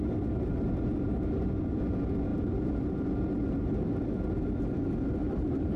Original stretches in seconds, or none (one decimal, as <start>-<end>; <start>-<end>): 0.0-2.3; 2.9-5.2